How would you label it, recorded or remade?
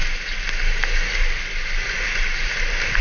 recorded